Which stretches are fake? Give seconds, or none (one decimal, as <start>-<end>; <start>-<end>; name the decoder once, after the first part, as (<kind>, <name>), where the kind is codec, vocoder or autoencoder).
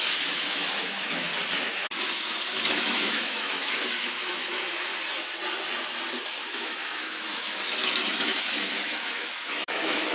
0.0-1.3 (autoencoder, DAC-VAE); 2.5-4.9; 6.2-10.1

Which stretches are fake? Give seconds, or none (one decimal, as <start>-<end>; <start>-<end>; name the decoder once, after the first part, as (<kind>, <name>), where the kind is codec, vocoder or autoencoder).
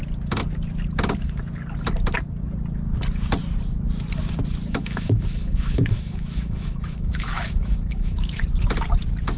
4.7-8.4 (autoencoder, DAC-VAE)